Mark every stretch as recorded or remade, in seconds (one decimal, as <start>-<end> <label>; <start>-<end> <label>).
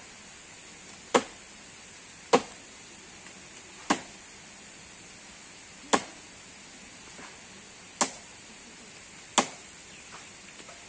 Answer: 0.0-10.9 recorded